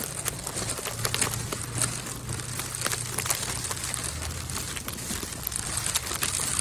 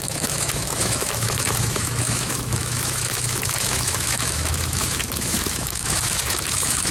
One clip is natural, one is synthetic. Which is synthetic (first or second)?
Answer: second